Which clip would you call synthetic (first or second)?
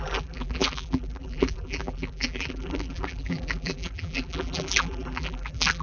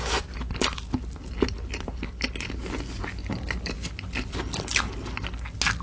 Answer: first